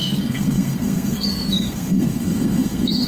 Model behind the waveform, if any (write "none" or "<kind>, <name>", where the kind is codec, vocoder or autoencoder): codec, SNAC